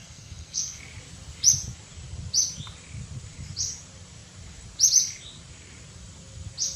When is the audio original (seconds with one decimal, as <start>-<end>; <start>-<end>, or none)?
0.8-6.8